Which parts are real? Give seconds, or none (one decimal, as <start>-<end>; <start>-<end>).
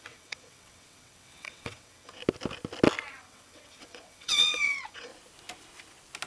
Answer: 2.2-3.1; 5.1-6.3